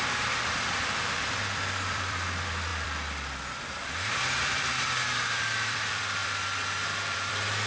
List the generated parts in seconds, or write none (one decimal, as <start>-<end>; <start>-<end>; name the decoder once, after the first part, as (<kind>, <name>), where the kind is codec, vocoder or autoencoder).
0.0-7.7 (vocoder, BigVGAN v2)